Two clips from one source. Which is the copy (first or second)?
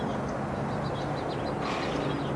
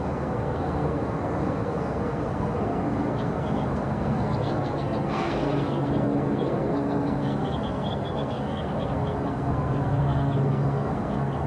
second